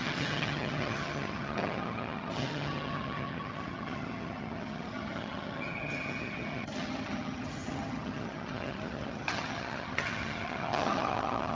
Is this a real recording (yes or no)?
no